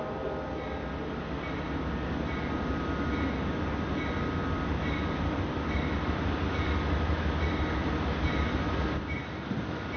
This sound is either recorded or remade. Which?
recorded